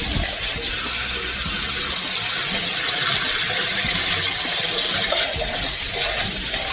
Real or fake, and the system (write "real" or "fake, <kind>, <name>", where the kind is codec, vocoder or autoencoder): real